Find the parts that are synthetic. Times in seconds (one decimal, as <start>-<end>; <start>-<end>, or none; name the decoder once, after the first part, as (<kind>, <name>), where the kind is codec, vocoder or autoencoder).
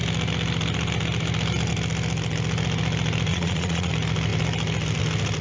3.3-3.9 (vocoder, Vocos)